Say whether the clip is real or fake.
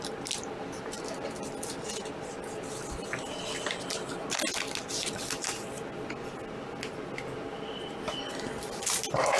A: real